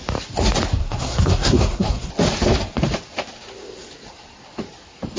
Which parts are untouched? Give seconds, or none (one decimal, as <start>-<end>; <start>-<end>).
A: 0.0-0.8; 2.1-5.2